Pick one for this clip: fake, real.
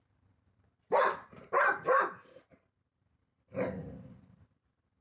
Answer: fake